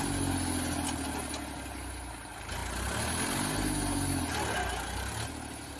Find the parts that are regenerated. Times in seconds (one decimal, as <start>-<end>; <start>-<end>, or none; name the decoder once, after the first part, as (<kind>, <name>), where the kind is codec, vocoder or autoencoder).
none